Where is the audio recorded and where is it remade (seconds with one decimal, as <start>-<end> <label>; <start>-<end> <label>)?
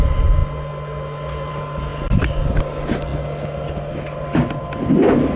0.0-5.4 recorded